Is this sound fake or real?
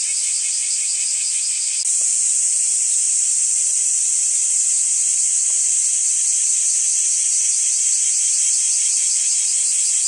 real